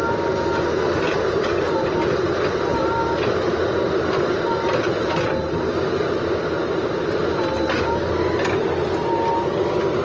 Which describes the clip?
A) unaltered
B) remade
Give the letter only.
A